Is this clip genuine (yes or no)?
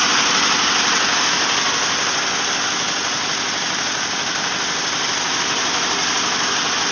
yes